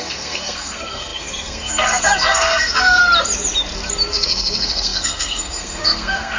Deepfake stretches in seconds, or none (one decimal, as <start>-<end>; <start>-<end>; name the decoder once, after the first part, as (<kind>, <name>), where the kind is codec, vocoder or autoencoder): 0.0-3.0 (codec, SNAC); 4.1-6.4